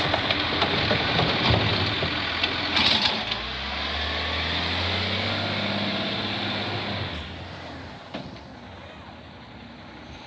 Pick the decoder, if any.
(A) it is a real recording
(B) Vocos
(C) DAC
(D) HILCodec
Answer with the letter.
A